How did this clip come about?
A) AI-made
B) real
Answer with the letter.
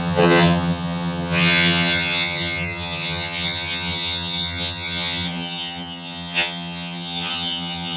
A